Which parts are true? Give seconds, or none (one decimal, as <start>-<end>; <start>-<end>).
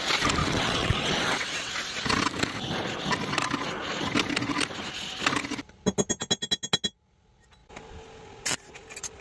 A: 0.0-0.4; 1.7-9.2